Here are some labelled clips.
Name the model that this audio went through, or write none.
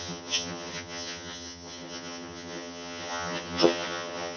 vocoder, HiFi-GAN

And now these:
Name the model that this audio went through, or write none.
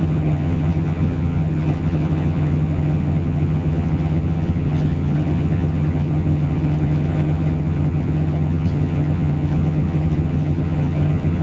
vocoder, HiFi-GAN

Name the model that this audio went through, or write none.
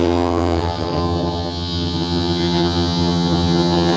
vocoder, HiFi-GAN